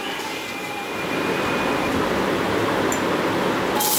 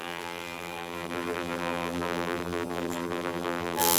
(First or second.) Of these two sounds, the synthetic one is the second